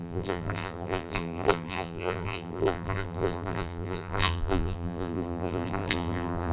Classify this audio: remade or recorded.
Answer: remade